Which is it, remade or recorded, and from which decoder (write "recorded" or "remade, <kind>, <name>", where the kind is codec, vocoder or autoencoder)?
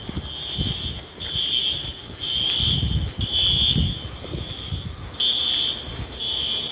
recorded